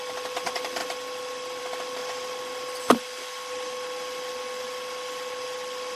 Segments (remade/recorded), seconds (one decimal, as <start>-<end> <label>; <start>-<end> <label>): 0.0-6.0 recorded